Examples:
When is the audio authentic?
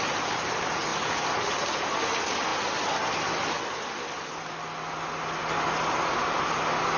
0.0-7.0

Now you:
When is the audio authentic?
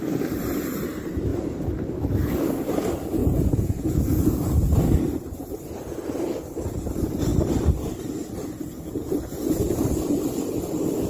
0.0-3.2; 4.1-11.1